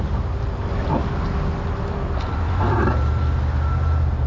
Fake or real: real